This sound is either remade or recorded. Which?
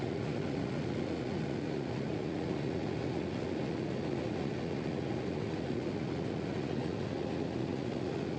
remade